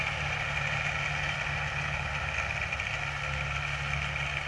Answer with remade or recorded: recorded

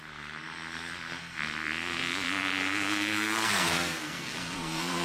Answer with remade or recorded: remade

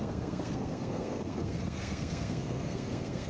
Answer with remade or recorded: remade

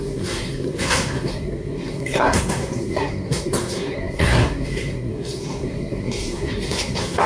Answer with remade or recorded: remade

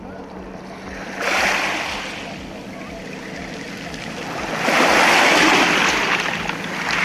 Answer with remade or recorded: recorded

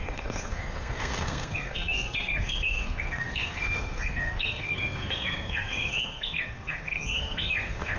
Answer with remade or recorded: remade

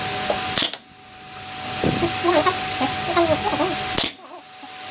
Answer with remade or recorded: recorded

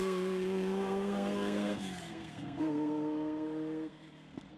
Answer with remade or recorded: remade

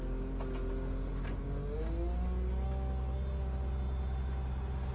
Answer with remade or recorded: recorded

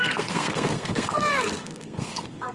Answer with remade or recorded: remade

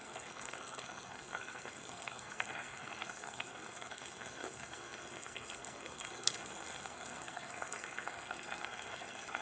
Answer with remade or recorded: remade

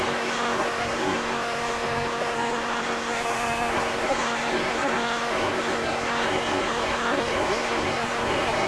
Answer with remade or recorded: remade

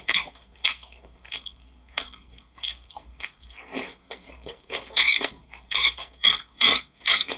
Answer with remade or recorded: remade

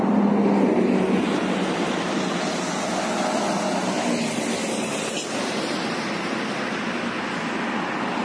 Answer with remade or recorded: recorded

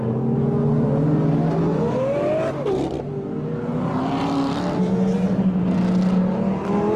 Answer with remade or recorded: recorded